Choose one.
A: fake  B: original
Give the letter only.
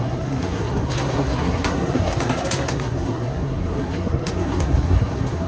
A